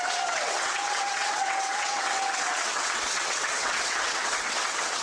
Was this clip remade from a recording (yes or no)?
yes